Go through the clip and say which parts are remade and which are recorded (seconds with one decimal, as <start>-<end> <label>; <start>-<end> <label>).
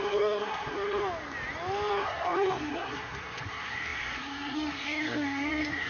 0.0-1.0 remade; 1.0-1.9 recorded; 1.9-5.9 remade